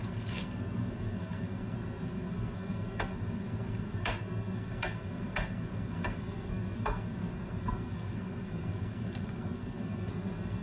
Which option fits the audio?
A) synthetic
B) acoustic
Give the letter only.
A